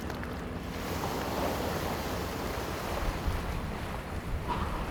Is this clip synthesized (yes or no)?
yes